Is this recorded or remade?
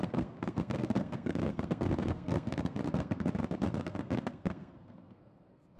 remade